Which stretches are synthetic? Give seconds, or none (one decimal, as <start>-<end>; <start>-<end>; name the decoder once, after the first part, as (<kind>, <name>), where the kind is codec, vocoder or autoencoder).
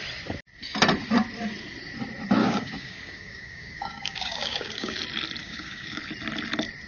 2.4-5.0 (codec, DAC); 5.4-6.0